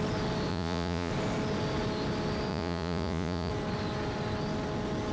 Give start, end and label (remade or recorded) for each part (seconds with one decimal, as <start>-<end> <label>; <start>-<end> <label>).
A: 0.0-0.5 recorded; 0.5-1.1 remade; 1.1-2.5 recorded; 2.5-3.5 remade; 3.5-5.1 recorded